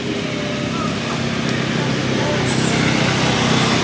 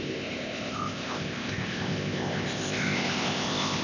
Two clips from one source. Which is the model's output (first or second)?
second